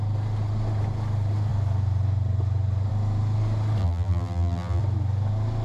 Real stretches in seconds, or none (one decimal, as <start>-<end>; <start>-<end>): 0.0-3.8; 4.8-5.6